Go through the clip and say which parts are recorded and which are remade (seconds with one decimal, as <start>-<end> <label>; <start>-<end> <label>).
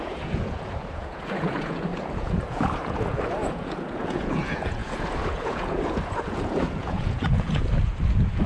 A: 0.0-8.5 remade